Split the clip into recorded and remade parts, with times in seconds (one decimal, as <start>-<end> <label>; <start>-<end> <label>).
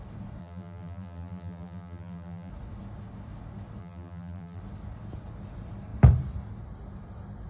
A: 0.0-0.4 recorded; 0.4-2.5 remade; 2.5-3.8 recorded; 3.8-4.6 remade; 4.6-7.5 recorded